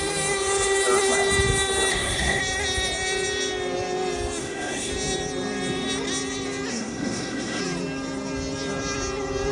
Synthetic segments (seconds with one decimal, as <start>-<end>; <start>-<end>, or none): 1.9-2.4; 4.4-4.9; 6.7-7.6